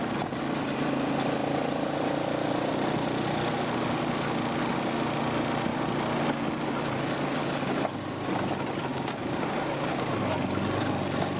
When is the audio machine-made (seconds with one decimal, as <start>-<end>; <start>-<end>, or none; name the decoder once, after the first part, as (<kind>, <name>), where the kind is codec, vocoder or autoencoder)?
8.9-10.1 (codec, DAC)